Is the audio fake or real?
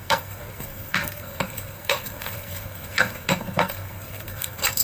fake